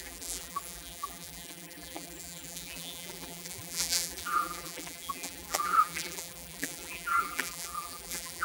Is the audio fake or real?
fake